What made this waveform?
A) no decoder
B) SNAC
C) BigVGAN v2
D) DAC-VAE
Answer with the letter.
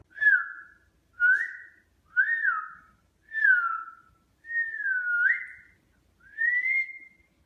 A